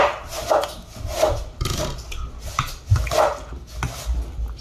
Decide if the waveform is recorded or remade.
recorded